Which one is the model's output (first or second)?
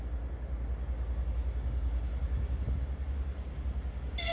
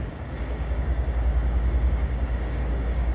second